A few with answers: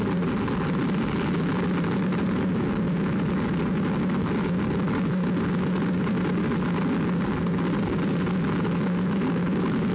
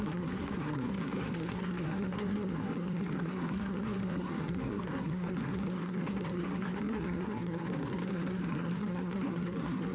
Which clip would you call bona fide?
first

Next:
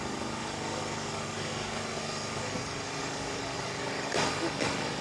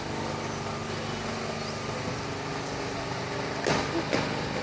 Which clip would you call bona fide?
second